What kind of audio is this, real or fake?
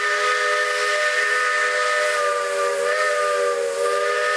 real